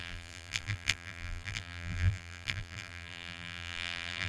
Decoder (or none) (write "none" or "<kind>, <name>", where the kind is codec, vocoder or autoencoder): vocoder, BigVGAN v2